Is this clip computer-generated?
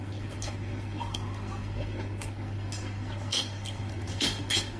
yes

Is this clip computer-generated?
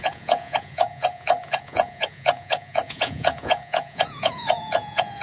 yes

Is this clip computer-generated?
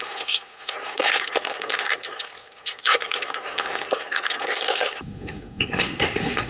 yes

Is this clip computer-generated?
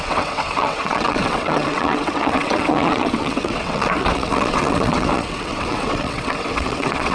yes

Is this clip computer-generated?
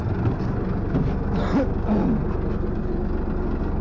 no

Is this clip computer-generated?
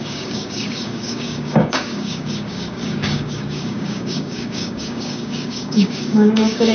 yes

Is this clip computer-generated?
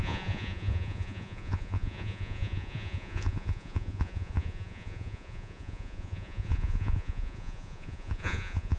yes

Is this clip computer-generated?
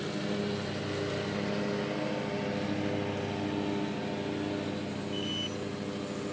no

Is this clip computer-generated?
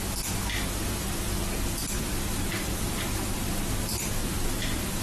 no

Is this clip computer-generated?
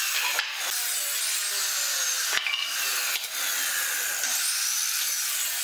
no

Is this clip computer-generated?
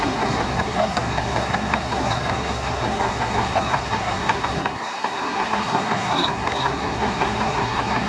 yes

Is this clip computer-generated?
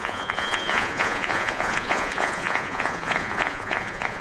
yes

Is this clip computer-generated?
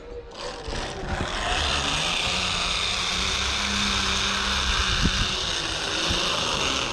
no